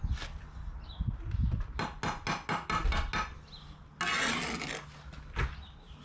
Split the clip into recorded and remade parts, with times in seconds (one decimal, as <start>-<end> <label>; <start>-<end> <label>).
0.0-6.0 recorded